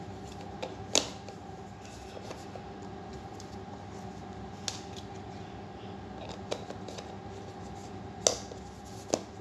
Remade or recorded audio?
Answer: recorded